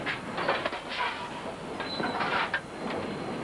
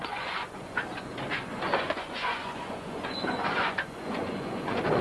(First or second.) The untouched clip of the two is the first